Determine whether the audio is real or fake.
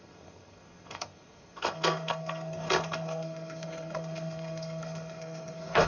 fake